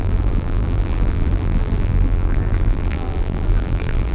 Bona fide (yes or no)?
no